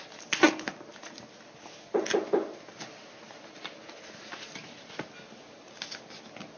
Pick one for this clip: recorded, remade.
recorded